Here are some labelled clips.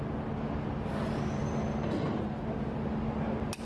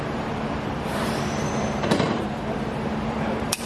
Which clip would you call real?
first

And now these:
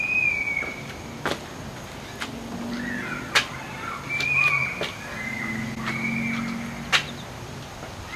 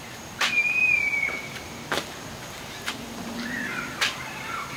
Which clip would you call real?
first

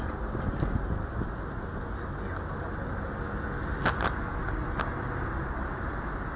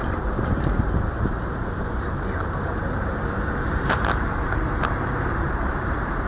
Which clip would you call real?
first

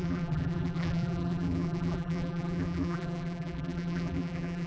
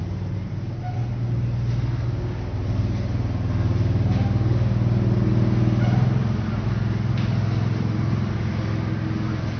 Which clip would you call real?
second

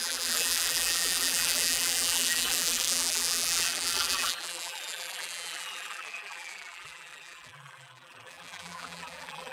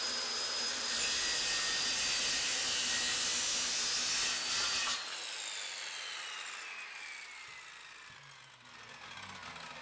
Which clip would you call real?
second